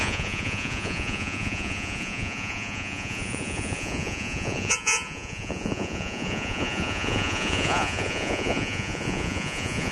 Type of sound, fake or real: fake